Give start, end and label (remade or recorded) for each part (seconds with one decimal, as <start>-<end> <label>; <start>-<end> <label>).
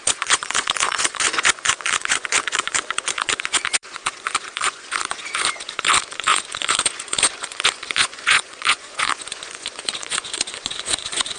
0.0-11.4 remade